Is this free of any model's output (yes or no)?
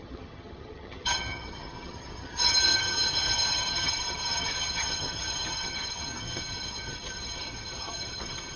no